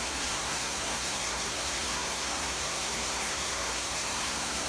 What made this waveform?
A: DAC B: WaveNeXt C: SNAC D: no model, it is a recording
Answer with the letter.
C